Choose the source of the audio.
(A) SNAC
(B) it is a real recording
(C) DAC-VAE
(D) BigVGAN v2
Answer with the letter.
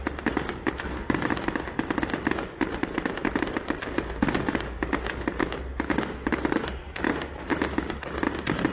B